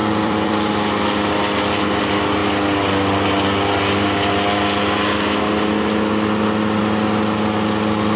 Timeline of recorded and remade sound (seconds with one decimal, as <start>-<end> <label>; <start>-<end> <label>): 0.0-0.5 remade; 0.5-8.2 recorded